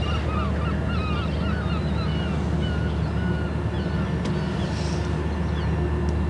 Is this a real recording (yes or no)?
yes